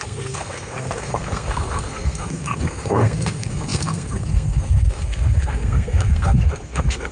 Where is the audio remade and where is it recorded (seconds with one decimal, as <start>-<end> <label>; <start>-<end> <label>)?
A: 0.0-7.1 remade